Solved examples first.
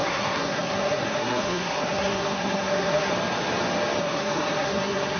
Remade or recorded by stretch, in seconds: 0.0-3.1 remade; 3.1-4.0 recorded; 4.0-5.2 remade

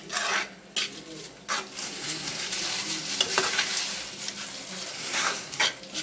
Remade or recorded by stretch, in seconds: 0.0-1.8 recorded; 1.8-2.5 remade; 2.5-4.9 recorded; 4.9-5.6 remade; 5.6-6.0 recorded

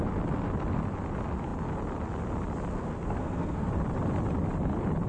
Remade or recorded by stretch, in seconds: 0.0-2.7 recorded; 2.7-3.7 remade; 3.7-5.1 recorded

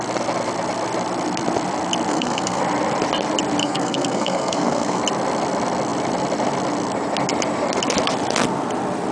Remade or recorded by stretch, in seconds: 0.0-2.1 recorded; 2.1-2.6 remade; 2.6-3.6 recorded; 3.6-5.0 remade; 5.0-9.1 recorded

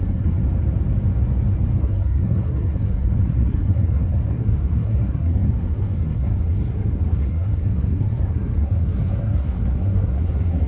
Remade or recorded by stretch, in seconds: 0.0-0.4 remade; 0.4-1.8 recorded; 1.8-10.7 remade

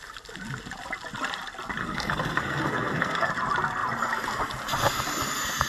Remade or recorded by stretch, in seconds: 0.0-1.8 recorded; 1.8-3.3 remade; 3.3-5.7 recorded